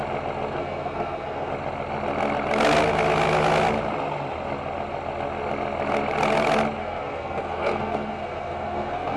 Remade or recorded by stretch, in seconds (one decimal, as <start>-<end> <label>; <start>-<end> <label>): 0.0-0.6 recorded; 0.6-1.5 remade; 1.5-6.8 recorded; 6.8-9.2 remade